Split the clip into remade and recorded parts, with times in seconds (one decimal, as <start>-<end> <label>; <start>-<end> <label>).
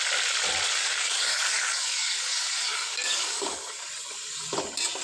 0.0-0.8 recorded; 0.8-3.8 remade; 3.8-5.0 recorded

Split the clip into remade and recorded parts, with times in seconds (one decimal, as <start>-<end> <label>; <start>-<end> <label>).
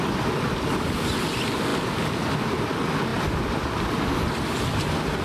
0.0-5.2 recorded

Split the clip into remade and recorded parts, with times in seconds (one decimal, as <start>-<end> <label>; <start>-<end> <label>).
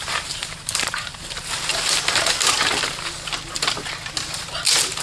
0.0-1.7 remade; 1.7-5.0 recorded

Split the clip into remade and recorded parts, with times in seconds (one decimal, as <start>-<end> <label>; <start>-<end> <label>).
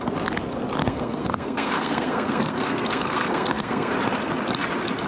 0.0-0.8 recorded; 0.8-3.9 remade; 3.9-5.1 recorded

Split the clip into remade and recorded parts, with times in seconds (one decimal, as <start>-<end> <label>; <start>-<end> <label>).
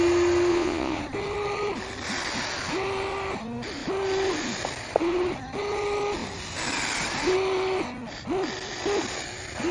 0.0-0.5 recorded; 0.5-1.0 remade; 1.0-9.7 recorded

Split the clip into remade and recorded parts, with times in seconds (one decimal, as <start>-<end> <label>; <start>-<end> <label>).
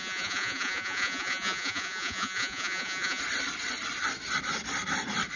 0.0-3.2 remade; 3.2-5.4 recorded